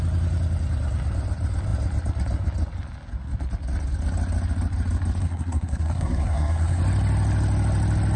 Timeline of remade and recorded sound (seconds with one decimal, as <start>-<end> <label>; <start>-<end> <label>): 0.0-5.2 recorded; 5.2-6.8 remade; 6.8-8.2 recorded